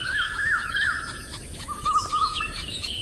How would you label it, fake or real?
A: fake